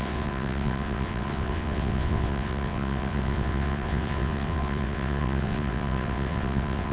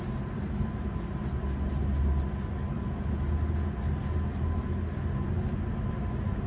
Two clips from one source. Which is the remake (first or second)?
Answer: first